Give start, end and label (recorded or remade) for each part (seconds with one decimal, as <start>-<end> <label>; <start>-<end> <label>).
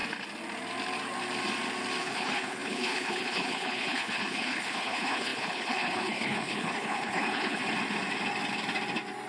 0.0-2.0 recorded; 2.0-7.6 remade; 7.6-9.3 recorded